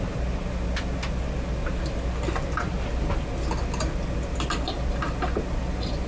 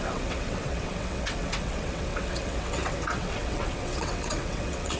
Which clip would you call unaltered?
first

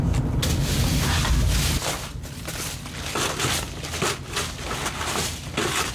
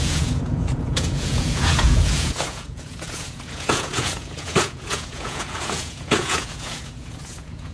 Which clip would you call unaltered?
first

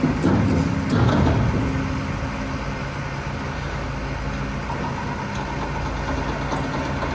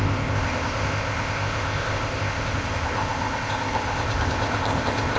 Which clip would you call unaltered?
first